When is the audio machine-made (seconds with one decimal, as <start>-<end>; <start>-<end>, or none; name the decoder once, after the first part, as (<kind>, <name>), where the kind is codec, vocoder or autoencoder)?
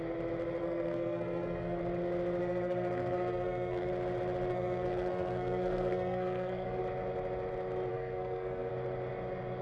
0.6-1.8 (codec, SNAC); 2.4-3.9; 4.5-6.8; 7.9-8.7